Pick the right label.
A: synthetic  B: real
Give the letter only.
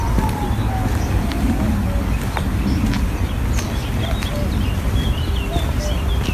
B